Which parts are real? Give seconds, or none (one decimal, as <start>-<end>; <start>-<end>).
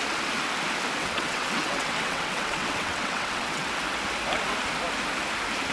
0.0-1.0; 3.7-5.7